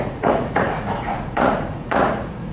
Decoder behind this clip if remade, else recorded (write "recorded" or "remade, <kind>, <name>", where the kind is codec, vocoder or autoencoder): remade, vocoder, Vocos